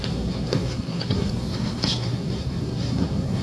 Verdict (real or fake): fake